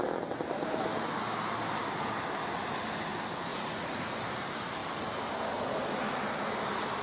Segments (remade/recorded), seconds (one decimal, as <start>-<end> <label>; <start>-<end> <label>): 0.0-3.5 recorded; 3.5-4.2 remade; 4.2-7.0 recorded